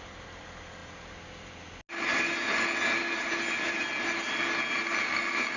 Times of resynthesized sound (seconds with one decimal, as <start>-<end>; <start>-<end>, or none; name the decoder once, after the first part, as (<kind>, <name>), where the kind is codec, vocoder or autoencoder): none